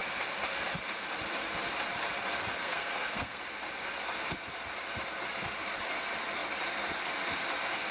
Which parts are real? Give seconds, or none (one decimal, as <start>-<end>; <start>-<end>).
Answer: 0.0-2.6; 3.4-7.9